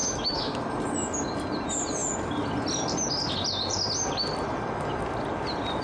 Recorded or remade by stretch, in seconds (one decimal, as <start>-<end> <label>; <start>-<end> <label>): 0.0-0.7 remade; 0.7-5.8 recorded